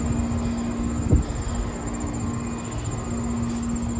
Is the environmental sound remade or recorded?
recorded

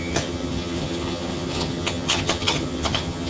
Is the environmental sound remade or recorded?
remade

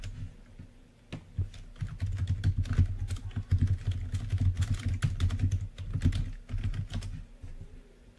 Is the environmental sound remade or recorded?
recorded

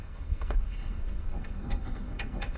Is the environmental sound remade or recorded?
remade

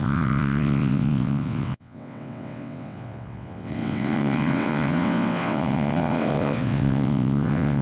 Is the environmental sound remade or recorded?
remade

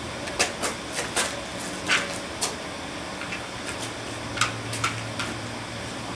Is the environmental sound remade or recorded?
recorded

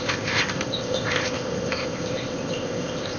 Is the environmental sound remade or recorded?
remade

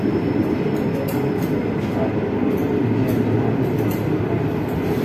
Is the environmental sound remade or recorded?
recorded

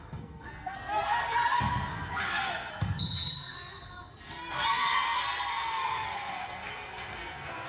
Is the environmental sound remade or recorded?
remade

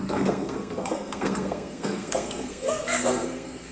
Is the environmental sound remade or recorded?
remade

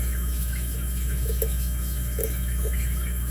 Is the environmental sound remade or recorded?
remade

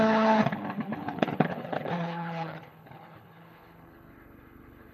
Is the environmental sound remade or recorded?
remade